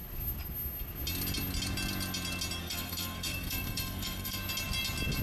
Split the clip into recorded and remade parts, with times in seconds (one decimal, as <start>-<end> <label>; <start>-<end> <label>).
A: 0.0-2.6 recorded; 2.6-4.4 remade; 4.4-5.2 recorded